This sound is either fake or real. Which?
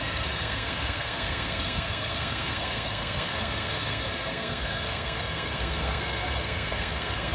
fake